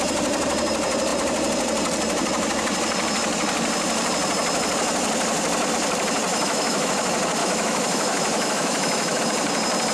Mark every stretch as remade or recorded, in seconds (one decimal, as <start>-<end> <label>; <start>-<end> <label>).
0.0-6.3 recorded; 6.3-6.9 remade; 6.9-7.4 recorded; 7.4-9.2 remade; 9.2-9.9 recorded